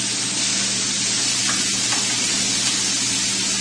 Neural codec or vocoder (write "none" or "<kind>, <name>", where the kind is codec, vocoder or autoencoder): none